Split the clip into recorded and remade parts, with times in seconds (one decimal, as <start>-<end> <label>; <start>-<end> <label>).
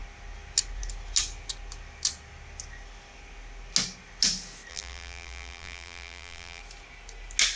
0.0-4.7 recorded; 4.7-6.6 remade; 6.6-7.6 recorded